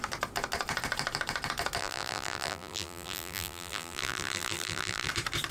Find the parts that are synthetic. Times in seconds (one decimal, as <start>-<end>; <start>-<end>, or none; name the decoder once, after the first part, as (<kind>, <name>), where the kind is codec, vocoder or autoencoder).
1.8-5.1 (vocoder, BigVGAN v2)